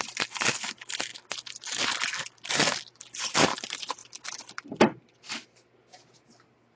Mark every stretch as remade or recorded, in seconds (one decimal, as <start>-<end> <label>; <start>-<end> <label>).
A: 0.0-1.1 remade; 1.1-3.1 recorded; 3.1-4.0 remade; 4.0-4.5 recorded; 4.5-5.3 remade; 5.3-6.8 recorded